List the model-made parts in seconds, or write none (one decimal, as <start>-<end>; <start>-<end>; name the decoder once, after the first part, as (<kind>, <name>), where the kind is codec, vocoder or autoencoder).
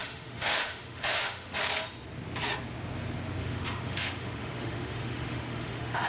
0.0-1.6 (autoencoder, DAC-VAE); 3.4-6.1